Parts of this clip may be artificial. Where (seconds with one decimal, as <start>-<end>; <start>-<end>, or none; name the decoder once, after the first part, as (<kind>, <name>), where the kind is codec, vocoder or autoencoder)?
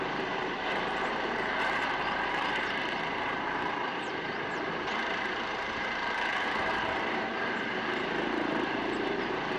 0.0-7.3 (vocoder, BigVGAN v2); 8.3-9.6